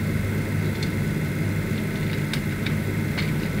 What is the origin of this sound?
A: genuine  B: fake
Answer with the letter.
A